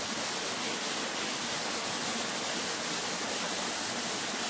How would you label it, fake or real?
real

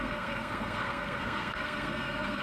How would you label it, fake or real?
fake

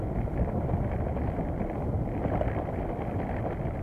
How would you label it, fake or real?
real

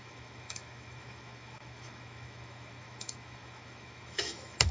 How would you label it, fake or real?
fake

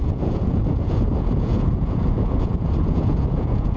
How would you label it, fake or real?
fake